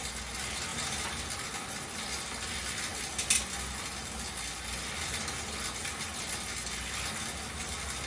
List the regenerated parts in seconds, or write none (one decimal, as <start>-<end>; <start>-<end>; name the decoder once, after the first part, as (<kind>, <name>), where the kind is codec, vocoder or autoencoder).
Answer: none